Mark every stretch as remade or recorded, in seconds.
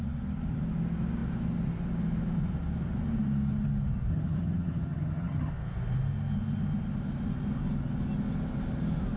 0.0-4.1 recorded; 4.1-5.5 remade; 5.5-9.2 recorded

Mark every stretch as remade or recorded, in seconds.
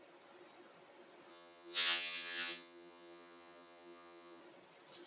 0.0-1.3 recorded; 1.3-4.4 remade; 4.4-5.1 recorded